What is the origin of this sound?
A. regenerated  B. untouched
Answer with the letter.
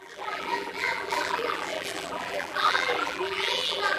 A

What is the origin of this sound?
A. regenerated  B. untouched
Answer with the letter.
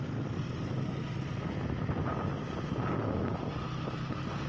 B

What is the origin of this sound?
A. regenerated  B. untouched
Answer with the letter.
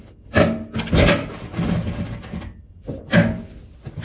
B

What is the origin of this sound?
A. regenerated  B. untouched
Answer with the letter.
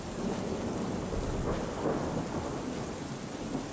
B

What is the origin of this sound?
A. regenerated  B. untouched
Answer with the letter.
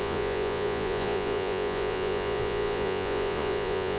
A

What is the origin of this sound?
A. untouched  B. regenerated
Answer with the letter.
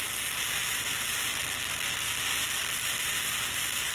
A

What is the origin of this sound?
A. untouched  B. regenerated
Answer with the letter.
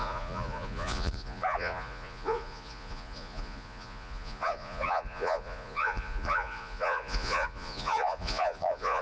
B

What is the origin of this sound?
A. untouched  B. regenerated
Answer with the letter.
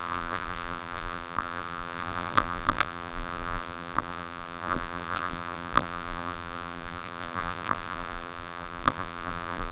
B